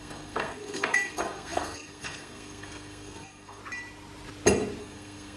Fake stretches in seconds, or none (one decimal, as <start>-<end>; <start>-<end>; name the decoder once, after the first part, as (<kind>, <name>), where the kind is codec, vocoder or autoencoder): 0.0-3.6 (codec, SNAC); 4.8-5.4